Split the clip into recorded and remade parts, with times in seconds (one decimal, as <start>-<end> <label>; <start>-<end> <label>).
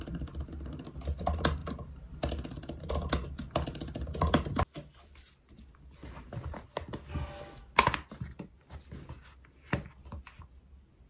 0.0-1.6 recorded; 1.6-2.3 remade; 2.3-11.1 recorded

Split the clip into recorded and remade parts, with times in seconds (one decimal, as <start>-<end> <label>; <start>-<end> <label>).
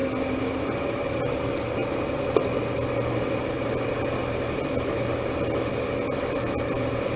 0.0-1.2 recorded; 1.2-1.8 remade; 1.8-2.6 recorded; 2.6-4.2 remade; 4.2-4.9 recorded; 4.9-7.2 remade